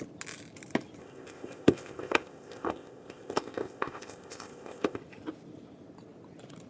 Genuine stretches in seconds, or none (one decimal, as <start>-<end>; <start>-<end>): 0.0-1.0; 5.0-6.7